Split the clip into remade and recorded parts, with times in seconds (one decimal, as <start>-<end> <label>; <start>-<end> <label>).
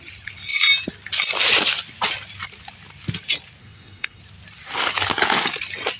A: 0.0-3.6 recorded; 3.6-4.2 remade; 4.2-6.0 recorded